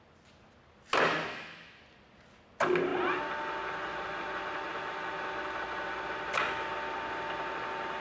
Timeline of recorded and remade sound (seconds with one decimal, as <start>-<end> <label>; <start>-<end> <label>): 0.0-1.3 recorded; 1.3-1.8 remade; 1.8-8.0 recorded